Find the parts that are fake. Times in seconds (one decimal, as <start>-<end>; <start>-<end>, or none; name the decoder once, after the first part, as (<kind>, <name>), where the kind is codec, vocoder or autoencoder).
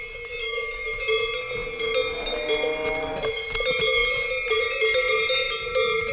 0.4-1.0 (autoencoder, DAC-VAE)